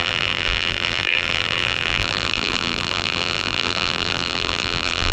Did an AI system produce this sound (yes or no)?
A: yes